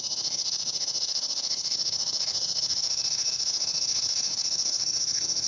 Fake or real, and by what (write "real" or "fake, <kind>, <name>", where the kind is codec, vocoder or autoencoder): fake, autoencoder, DAC-VAE